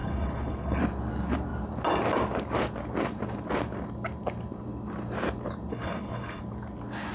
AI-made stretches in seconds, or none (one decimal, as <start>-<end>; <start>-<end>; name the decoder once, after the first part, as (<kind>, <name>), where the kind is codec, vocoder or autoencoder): 0.0-0.8 (codec, HILCodec); 5.7-6.4

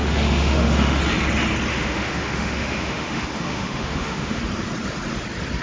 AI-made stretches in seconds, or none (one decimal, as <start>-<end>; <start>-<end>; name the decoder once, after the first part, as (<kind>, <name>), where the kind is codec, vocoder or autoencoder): 0.0-1.0 (autoencoder, DAC-VAE); 1.7-4.4

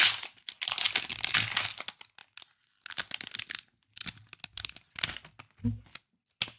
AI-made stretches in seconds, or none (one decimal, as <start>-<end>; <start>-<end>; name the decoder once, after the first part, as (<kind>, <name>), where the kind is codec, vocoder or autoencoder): none

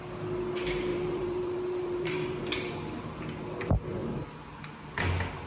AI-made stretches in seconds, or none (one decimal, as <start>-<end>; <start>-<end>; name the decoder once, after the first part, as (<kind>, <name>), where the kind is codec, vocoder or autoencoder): 0.9-3.2 (vocoder, BigVGAN v2)